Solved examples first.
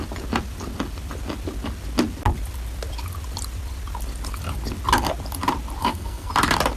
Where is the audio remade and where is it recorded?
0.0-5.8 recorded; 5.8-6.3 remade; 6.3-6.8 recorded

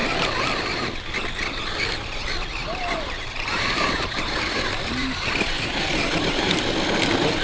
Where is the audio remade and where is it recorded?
0.0-2.6 recorded; 2.6-6.6 remade; 6.6-7.4 recorded

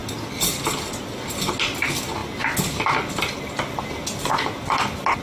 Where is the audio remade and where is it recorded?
0.0-5.2 recorded

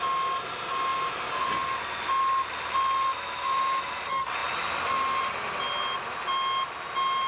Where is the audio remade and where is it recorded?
0.0-3.1 recorded; 3.1-4.0 remade; 4.0-7.3 recorded

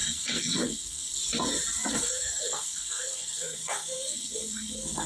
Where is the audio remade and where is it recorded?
0.0-1.2 remade; 1.2-1.9 recorded; 1.9-5.1 remade

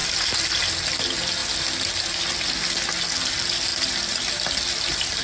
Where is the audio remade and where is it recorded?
0.0-3.7 recorded; 3.7-5.2 remade

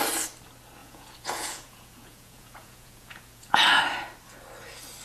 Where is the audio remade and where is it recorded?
0.0-0.8 recorded; 0.8-3.8 remade; 3.8-5.0 recorded

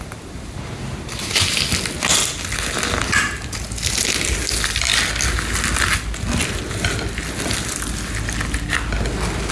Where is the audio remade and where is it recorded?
0.0-9.5 recorded